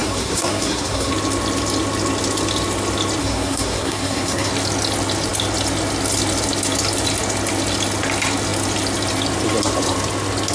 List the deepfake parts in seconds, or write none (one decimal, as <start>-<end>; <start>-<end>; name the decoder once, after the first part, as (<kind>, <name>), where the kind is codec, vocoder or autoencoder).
0.0-1.1 (codec, SNAC); 3.2-4.5